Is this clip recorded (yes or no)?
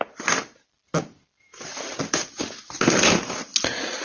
yes